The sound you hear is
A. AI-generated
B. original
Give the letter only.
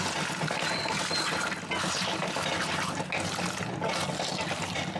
B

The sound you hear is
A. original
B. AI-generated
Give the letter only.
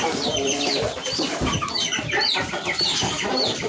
B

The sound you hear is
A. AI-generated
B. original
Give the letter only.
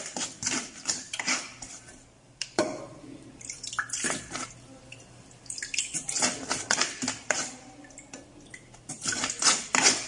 A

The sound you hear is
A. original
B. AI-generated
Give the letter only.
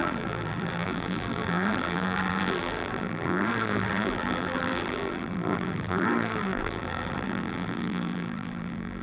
B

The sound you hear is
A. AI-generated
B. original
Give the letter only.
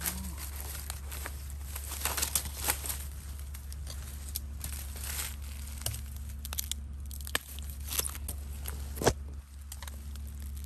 B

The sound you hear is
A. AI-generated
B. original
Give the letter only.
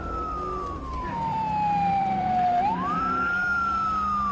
A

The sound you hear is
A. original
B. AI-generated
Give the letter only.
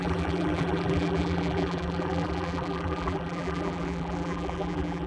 B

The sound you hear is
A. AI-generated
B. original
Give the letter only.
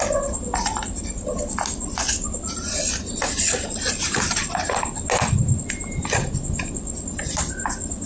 B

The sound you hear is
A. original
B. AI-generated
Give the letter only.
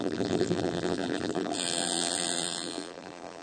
B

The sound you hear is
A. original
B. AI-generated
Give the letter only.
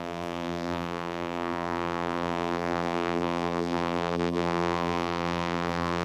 B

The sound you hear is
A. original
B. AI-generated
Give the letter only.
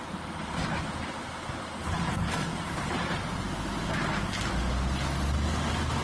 A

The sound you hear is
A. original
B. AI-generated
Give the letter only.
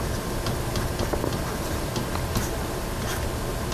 A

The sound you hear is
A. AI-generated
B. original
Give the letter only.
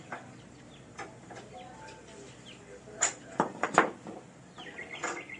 A